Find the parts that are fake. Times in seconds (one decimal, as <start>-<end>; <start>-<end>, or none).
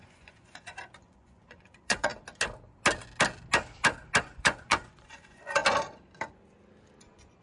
0.0-2.1; 4.2-5.6; 7.0-7.4